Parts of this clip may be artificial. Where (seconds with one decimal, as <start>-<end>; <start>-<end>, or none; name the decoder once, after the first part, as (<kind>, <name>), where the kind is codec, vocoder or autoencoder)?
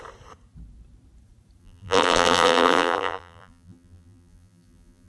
1.6-5.1 (vocoder, BigVGAN v2)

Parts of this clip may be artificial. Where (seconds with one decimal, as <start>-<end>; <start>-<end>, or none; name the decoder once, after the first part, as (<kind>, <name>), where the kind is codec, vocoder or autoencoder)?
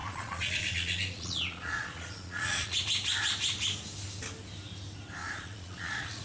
0.0-2.8 (vocoder, Vocos); 5.2-6.2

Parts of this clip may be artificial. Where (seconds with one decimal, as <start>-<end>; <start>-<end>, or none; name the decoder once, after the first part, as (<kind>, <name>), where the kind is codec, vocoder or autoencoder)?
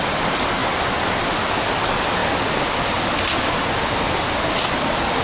none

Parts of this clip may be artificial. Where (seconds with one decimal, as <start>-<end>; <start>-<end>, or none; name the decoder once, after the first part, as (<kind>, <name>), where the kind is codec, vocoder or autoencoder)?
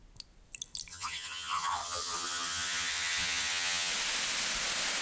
0.9-3.9 (vocoder, HiFi-GAN)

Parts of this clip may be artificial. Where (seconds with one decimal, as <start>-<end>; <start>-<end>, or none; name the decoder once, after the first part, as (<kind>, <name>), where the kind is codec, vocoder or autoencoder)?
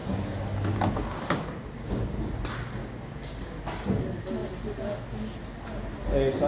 0.0-2.3 (codec, DAC); 2.8-3.6